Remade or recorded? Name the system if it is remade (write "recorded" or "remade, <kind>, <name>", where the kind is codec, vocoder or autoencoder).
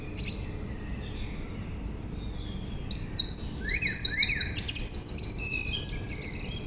recorded